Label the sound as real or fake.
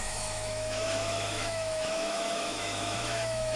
fake